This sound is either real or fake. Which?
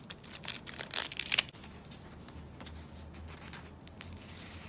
real